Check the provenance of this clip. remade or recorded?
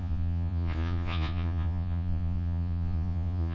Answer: remade